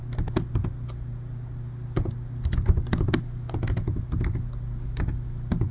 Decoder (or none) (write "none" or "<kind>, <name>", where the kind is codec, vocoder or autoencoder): none